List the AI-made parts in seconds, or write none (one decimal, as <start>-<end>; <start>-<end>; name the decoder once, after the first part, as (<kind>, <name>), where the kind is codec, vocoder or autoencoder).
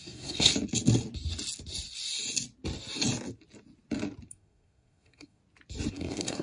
0.0-0.5 (codec, SNAC); 4.3-5.4; 5.9-6.4